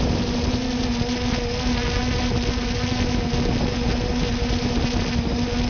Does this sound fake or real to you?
real